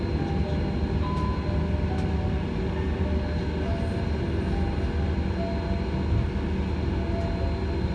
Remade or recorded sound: recorded